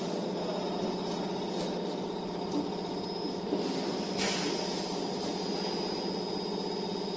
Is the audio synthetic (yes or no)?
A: no